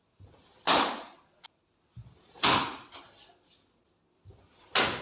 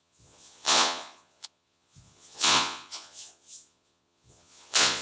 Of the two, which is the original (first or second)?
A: first